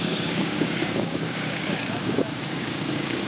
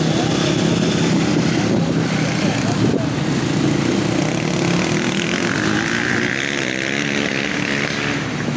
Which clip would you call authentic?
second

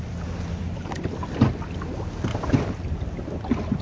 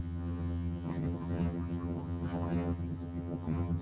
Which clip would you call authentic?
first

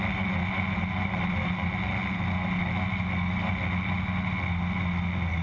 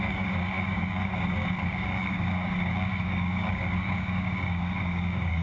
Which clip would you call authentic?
first